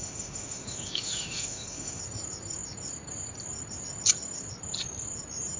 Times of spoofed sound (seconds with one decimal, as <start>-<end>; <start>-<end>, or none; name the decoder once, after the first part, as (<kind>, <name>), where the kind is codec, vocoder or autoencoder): 0.0-2.0 (autoencoder, DAC-VAE)